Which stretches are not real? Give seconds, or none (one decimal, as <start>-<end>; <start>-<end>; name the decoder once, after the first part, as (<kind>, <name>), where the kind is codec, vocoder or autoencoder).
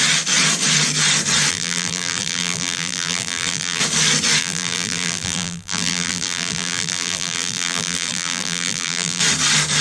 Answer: 1.5-3.8 (vocoder, BigVGAN v2); 4.4-9.2